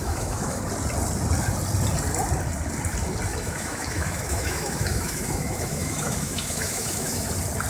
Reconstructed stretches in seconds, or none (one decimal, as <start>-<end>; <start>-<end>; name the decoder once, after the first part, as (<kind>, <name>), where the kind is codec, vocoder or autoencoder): 0.0-0.6 (autoencoder, DAC-VAE); 3.3-7.3